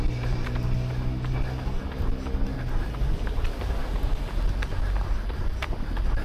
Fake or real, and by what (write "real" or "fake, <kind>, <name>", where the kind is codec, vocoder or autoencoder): real